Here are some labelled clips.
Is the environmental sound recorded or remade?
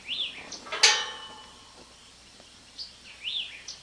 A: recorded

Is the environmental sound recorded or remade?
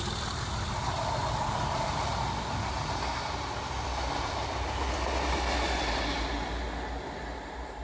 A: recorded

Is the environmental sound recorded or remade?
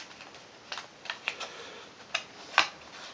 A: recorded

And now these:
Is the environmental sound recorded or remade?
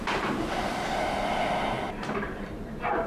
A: remade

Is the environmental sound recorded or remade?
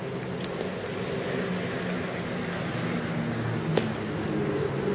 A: recorded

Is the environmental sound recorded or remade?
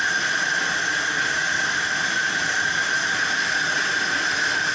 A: recorded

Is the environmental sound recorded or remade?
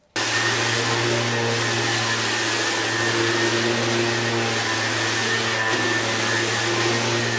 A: recorded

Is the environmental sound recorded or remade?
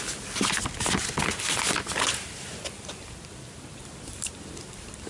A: recorded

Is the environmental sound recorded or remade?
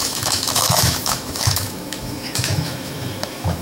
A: remade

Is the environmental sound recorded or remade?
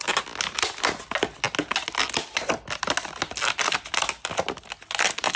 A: recorded